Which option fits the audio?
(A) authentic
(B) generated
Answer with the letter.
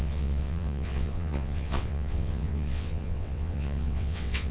B